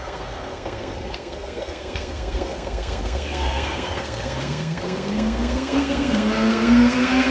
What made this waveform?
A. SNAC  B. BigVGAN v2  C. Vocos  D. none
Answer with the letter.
A